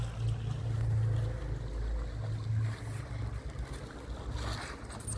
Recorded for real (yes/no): yes